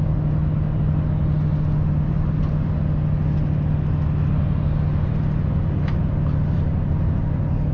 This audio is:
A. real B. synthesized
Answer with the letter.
A